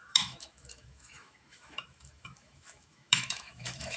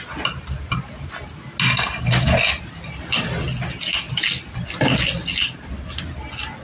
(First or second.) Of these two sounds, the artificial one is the first